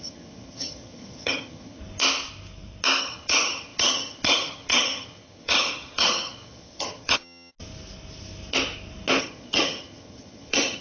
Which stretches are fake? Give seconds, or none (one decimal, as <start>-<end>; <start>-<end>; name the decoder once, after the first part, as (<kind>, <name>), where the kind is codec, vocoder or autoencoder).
0.0-1.8 (vocoder, HiFi-GAN); 3.0-7.5; 9.2-10.8